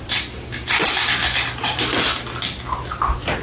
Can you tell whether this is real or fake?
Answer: real